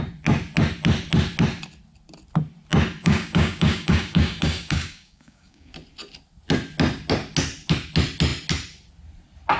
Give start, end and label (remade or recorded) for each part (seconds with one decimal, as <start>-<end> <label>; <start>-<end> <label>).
0.0-3.0 recorded; 3.0-5.7 remade; 5.7-9.6 recorded

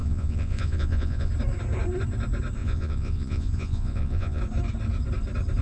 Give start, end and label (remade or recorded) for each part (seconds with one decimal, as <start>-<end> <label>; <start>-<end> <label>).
0.0-1.3 remade; 1.3-2.6 recorded; 2.6-4.4 remade; 4.4-5.6 recorded